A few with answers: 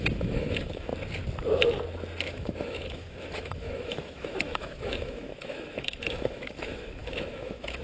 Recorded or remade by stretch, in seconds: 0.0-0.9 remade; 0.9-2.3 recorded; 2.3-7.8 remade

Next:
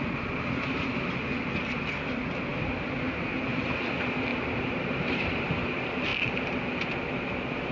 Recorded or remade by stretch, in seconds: 0.0-4.3 recorded; 4.3-5.6 remade; 5.6-7.7 recorded

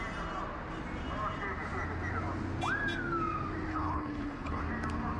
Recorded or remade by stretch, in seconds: 0.0-3.7 recorded; 3.7-4.6 remade; 4.6-5.2 recorded